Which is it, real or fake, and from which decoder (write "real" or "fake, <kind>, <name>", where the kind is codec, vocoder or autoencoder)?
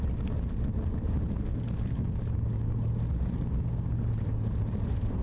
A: real